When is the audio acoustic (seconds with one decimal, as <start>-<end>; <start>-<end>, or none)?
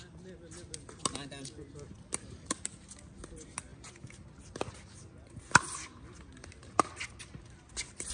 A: 0.0-1.6; 2.7-8.1